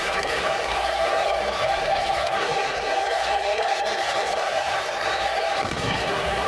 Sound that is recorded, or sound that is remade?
remade